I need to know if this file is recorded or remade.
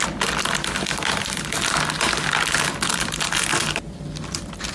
recorded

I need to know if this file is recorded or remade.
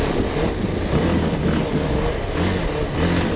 recorded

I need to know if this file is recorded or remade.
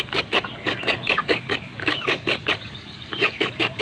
remade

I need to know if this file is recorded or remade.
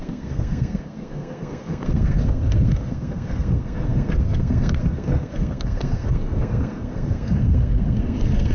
remade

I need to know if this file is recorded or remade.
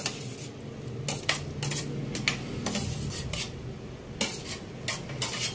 recorded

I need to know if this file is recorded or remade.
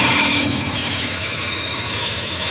remade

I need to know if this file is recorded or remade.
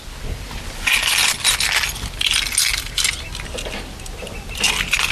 recorded